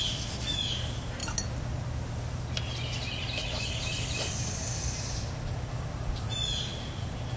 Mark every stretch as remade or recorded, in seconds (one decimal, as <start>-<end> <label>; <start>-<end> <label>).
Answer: 0.0-7.4 recorded